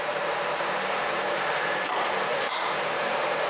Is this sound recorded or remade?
remade